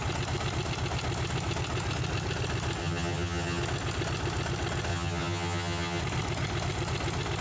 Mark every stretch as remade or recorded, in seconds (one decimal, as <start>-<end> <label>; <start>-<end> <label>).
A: 0.0-2.8 recorded; 2.8-3.6 remade; 3.6-4.9 recorded; 4.9-6.0 remade; 6.0-7.4 recorded